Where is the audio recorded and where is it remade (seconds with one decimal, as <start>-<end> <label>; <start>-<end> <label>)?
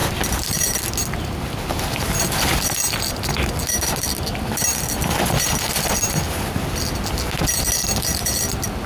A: 0.0-8.9 recorded